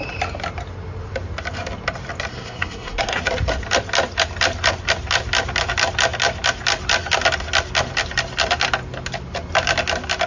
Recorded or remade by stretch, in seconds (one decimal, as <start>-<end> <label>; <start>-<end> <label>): 0.0-2.3 recorded; 2.3-3.2 remade; 3.2-10.3 recorded